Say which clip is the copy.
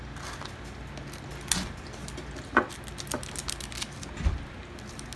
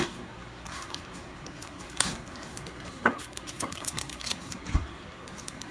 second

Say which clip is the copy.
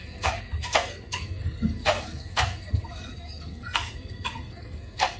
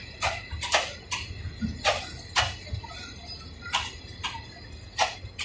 first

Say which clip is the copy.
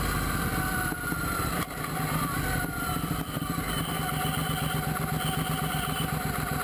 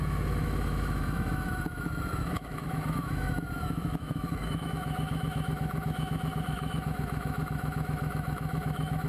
second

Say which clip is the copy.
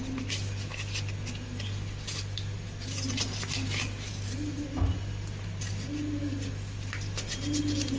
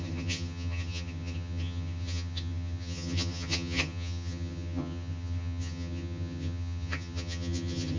second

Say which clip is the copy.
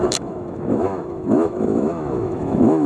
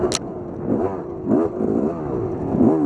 first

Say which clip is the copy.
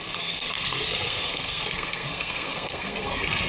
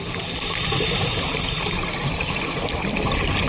first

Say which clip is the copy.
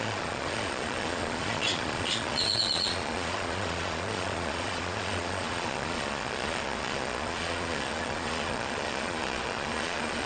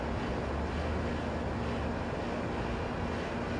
first